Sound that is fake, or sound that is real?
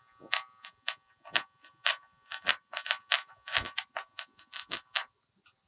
real